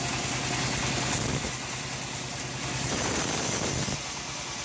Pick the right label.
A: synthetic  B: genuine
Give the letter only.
B